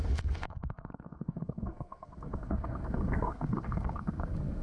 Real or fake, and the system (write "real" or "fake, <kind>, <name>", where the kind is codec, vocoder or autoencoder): fake, codec, SNAC